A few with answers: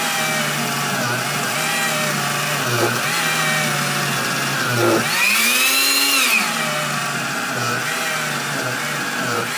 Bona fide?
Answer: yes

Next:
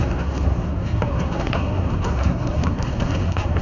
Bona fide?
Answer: no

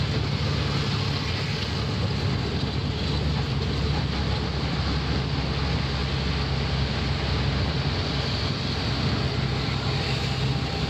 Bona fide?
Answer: yes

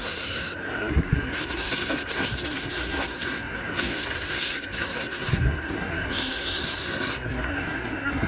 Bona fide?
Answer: no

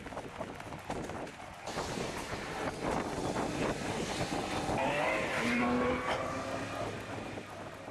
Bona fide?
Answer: yes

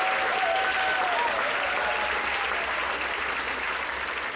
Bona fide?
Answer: yes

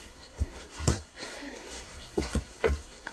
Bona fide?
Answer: no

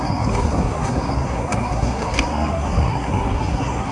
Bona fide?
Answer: no